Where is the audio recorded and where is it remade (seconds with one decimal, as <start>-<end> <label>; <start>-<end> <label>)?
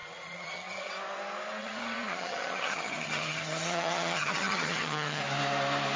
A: 0.0-0.9 remade; 0.9-1.6 recorded; 1.6-5.2 remade; 5.2-6.0 recorded